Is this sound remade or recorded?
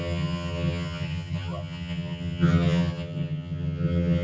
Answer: remade